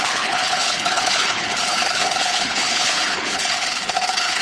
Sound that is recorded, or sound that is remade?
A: remade